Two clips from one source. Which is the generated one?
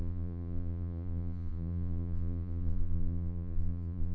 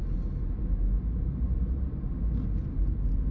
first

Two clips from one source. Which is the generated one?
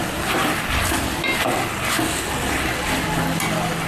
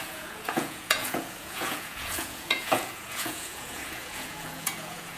second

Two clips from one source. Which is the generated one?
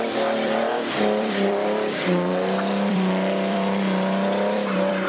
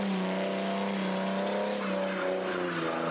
first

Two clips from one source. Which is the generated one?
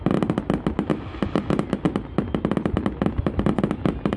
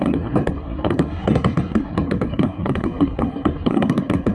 second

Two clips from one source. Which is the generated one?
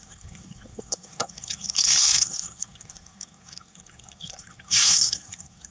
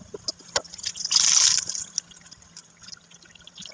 first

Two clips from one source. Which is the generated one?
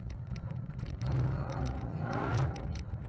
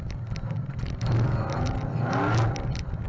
first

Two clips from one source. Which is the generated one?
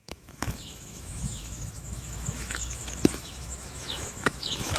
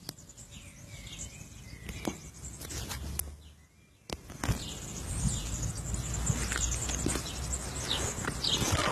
first